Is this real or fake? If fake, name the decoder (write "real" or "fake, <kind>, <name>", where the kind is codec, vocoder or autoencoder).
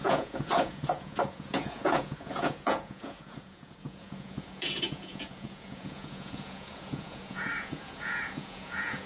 fake, vocoder, Vocos